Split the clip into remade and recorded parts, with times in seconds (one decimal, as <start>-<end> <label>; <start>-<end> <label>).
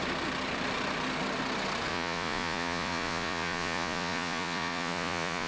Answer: 0.0-1.9 recorded; 1.9-5.5 remade